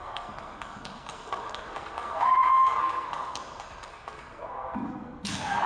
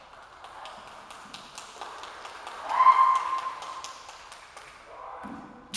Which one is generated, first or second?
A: first